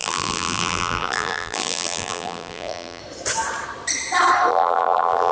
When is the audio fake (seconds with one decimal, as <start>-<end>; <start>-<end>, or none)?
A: 0.0-3.0; 4.5-5.3